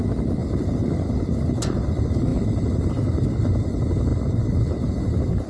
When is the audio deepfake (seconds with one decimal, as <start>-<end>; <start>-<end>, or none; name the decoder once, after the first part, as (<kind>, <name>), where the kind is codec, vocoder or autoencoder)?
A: 2.3-2.9 (vocoder, BigVGAN v2)